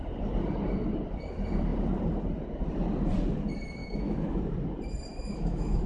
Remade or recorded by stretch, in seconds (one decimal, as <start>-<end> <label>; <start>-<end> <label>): 0.0-3.8 recorded; 3.8-4.4 remade; 4.4-5.1 recorded; 5.1-5.9 remade